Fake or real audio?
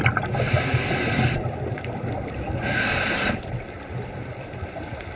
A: fake